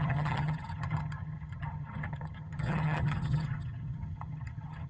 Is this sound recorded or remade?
remade